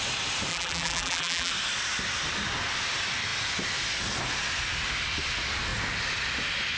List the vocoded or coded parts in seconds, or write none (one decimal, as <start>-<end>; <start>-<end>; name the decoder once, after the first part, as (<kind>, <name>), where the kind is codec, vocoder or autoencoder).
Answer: 0.5-1.5 (vocoder, BigVGAN v2)